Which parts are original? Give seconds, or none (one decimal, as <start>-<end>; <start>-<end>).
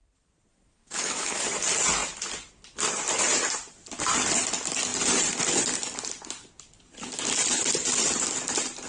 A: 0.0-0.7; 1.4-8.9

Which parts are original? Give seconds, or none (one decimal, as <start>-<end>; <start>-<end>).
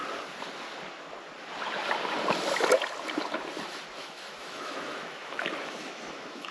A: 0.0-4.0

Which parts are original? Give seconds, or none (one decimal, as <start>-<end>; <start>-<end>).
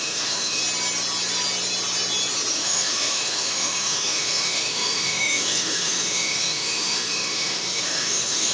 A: 0.6-2.5